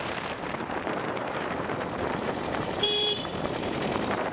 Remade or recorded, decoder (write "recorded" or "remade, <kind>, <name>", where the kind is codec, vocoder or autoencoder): remade, vocoder, BigVGAN v2